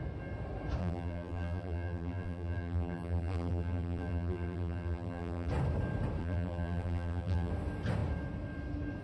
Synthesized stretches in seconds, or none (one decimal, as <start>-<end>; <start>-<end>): 0.8-5.5; 6.2-7.5